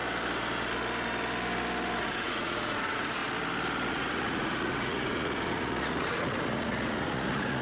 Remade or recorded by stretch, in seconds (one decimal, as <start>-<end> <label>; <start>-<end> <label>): 0.0-2.0 recorded; 2.0-3.2 remade; 3.2-3.9 recorded; 3.9-7.6 remade